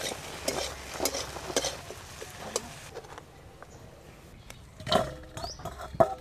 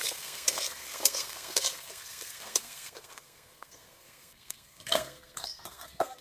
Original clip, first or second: first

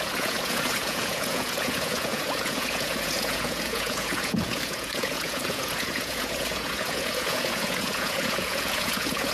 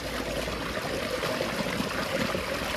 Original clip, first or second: second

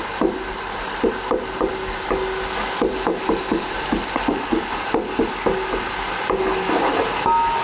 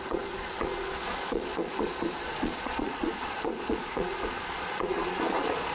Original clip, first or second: first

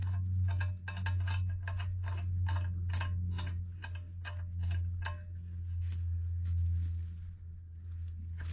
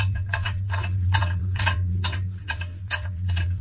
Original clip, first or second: first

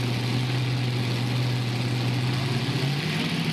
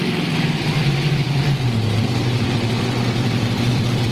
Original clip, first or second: first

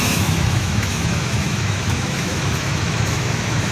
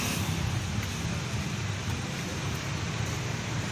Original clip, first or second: second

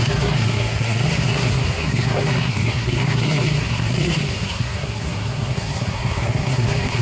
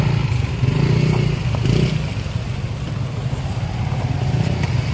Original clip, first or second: second